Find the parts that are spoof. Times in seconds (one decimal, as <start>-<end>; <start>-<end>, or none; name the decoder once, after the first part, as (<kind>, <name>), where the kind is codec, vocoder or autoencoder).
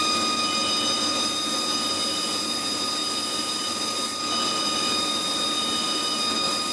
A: none